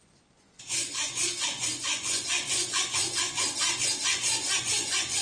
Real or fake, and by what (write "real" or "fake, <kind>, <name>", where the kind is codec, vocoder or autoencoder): fake, vocoder, Vocos